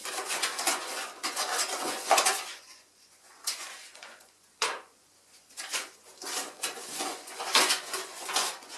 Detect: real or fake fake